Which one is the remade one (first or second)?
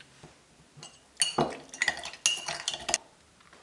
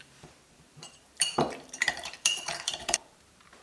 second